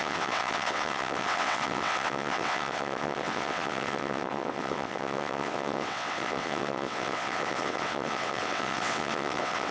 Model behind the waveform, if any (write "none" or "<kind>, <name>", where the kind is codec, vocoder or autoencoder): vocoder, WaveNeXt